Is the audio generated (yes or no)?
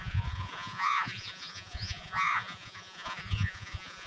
yes